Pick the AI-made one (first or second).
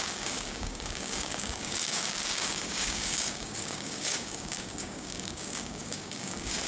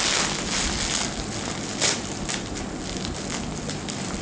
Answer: first